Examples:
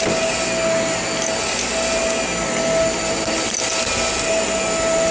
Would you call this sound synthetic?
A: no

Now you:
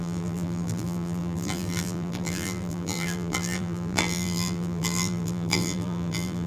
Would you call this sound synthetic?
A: yes